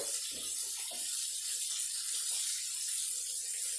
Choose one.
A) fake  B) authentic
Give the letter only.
B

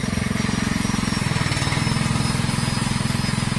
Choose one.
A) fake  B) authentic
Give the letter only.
B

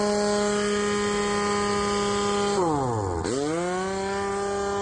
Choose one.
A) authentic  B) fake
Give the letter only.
A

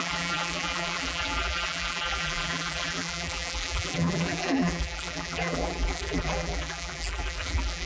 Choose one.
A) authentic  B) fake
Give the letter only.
B